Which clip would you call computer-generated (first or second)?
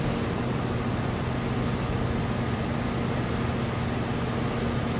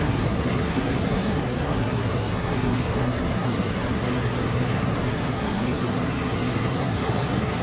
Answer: second